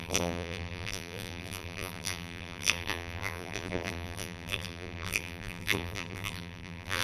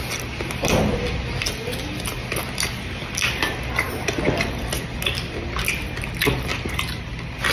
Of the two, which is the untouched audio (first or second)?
second